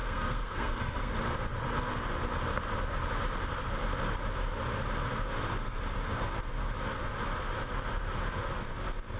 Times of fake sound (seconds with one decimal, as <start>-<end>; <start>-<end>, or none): 0.0-1.1